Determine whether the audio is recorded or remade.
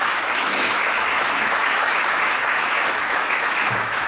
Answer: remade